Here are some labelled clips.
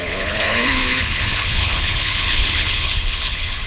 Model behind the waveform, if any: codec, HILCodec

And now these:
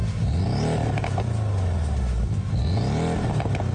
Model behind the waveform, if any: none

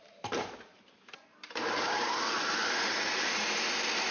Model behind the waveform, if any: vocoder, BigVGAN v2